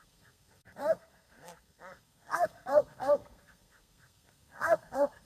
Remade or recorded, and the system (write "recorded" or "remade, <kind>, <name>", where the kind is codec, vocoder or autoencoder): remade, codec, SNAC